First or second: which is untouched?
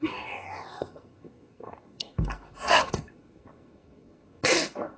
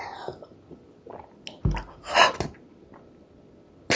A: second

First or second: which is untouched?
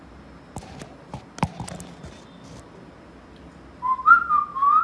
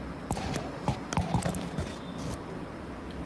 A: first